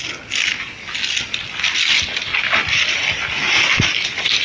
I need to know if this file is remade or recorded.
recorded